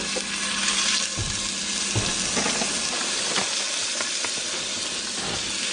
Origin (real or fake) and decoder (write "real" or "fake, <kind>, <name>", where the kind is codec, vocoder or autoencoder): real